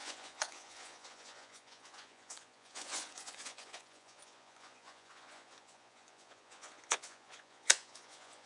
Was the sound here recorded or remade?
remade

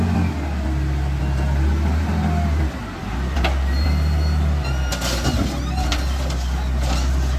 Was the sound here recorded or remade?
recorded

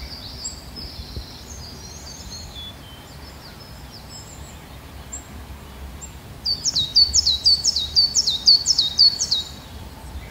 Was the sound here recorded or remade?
remade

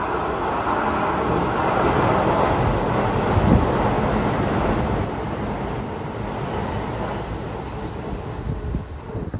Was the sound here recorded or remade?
recorded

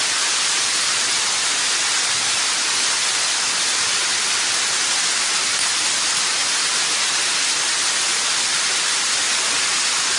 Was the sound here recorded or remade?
recorded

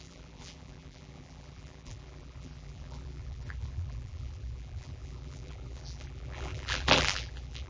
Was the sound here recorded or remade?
remade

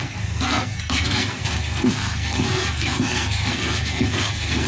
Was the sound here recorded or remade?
remade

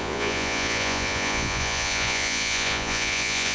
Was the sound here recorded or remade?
remade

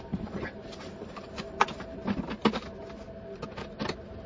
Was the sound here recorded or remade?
recorded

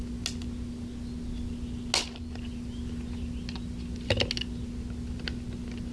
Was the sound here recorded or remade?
recorded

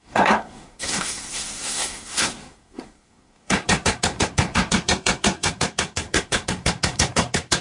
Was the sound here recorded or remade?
remade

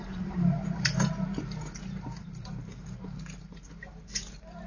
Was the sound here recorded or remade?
remade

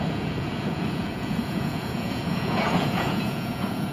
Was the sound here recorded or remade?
remade